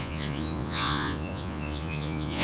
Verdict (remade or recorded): remade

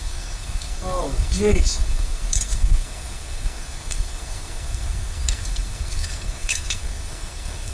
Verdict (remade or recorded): remade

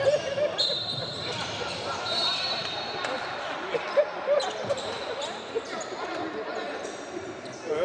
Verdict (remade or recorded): recorded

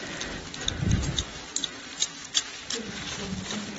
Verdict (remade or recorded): recorded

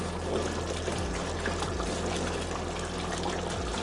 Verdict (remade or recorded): recorded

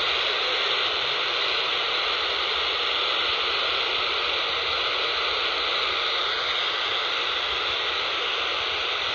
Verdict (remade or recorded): recorded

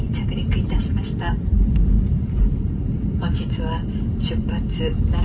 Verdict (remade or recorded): remade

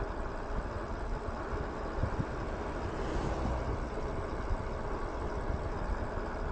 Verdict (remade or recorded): recorded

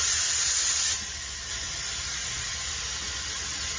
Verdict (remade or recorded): recorded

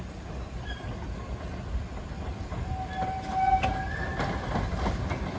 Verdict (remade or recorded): recorded